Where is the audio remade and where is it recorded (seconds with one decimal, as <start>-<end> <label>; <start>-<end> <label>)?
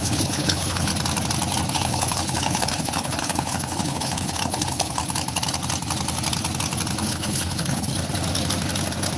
0.0-0.9 remade; 0.9-1.7 recorded; 1.7-5.0 remade; 5.0-7.0 recorded; 7.0-7.9 remade; 7.9-9.2 recorded